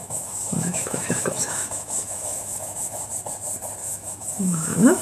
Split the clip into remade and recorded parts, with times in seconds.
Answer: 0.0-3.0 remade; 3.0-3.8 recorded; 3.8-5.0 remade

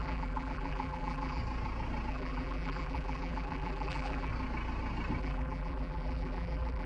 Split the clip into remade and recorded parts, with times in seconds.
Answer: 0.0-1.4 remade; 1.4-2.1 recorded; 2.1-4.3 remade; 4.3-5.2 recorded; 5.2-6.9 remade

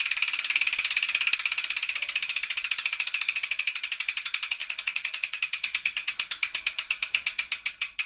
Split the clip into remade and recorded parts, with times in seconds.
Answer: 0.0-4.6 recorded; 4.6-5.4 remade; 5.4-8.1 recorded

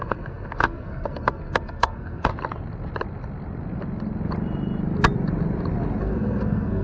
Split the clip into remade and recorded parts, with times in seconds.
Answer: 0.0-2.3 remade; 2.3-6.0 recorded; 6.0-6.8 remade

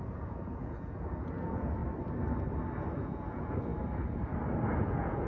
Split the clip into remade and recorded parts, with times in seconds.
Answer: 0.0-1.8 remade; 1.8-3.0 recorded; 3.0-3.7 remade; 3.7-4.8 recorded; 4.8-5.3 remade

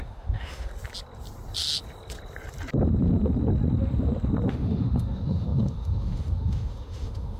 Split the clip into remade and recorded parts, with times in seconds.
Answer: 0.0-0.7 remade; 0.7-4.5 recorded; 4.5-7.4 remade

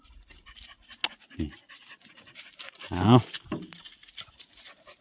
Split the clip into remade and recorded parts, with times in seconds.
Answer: 0.0-1.0 remade; 1.0-2.1 recorded; 2.1-3.2 remade; 3.2-3.8 recorded; 3.8-5.0 remade

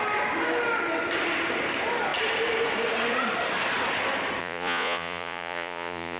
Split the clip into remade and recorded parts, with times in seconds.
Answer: 0.0-4.4 recorded; 4.4-6.2 remade